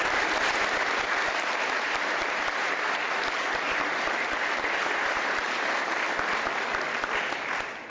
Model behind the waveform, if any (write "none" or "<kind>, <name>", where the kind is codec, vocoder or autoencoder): none